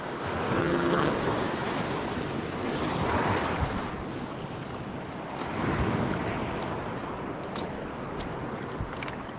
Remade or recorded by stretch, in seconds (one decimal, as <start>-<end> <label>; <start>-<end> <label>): 0.0-0.6 recorded; 0.6-1.1 remade; 1.1-9.4 recorded